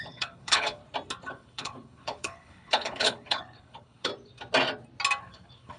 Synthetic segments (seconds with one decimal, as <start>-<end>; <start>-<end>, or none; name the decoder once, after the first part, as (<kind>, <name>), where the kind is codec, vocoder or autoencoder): 0.0-0.8 (codec, HILCodec); 1.3-4.1; 5.2-5.8